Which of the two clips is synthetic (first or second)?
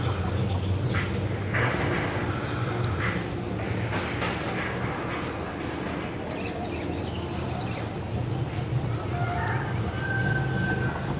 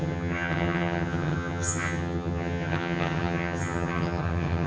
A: second